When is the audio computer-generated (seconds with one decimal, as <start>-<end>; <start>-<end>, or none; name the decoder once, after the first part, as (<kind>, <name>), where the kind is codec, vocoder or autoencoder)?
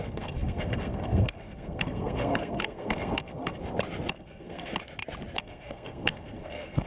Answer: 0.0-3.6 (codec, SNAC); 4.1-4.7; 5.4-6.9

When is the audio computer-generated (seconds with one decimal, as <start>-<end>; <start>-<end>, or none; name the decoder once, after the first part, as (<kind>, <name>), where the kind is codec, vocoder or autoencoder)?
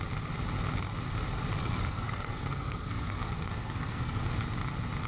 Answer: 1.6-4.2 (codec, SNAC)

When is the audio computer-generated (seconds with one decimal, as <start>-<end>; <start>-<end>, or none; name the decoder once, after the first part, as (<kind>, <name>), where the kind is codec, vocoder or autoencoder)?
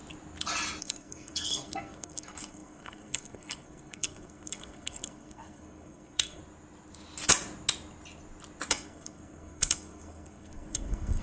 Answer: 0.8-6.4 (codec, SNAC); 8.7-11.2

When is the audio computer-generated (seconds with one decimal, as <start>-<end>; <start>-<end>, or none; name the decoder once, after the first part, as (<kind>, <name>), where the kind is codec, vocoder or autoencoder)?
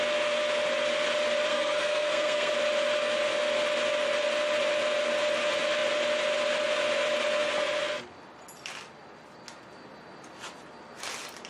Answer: 1.5-2.5 (codec, SNAC)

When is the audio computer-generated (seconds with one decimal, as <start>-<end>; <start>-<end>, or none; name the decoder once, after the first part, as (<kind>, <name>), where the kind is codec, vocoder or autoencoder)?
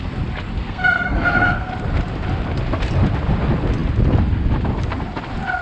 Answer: 0.6-1.7 (codec, SNAC)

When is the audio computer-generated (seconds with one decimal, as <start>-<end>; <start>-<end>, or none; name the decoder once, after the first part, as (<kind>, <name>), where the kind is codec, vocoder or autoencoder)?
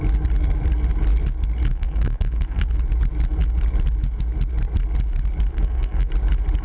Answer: 1.7-2.6 (codec, SNAC); 5.5-6.1